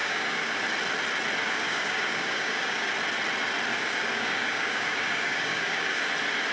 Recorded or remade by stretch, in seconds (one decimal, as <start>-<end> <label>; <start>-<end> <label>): 0.0-0.6 remade; 0.6-1.4 recorded; 1.4-2.9 remade; 2.9-3.7 recorded; 3.7-6.1 remade; 6.1-6.5 recorded